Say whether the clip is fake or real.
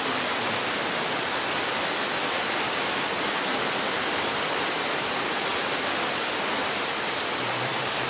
real